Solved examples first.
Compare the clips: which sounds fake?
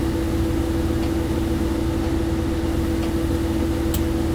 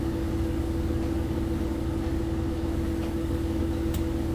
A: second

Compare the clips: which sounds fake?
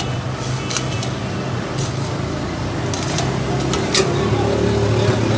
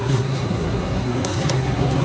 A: second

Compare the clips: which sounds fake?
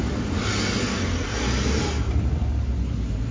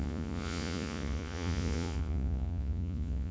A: second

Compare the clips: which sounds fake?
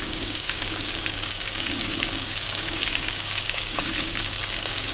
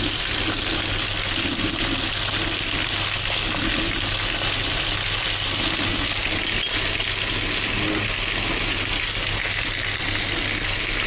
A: first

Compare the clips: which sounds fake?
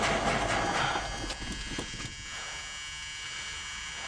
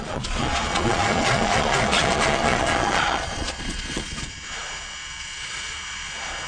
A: second